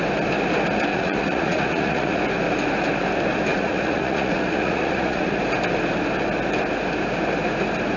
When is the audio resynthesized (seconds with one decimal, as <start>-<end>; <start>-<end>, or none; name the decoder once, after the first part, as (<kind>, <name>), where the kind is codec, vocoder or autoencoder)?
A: 0.9-2.2 (vocoder, Vocos); 3.5-5.4